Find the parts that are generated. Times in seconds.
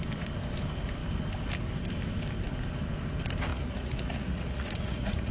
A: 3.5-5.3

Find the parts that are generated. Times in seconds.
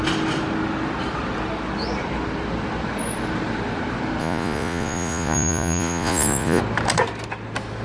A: 4.2-6.6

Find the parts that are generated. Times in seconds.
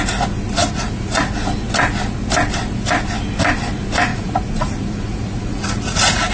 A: 0.6-1.2; 4.1-6.3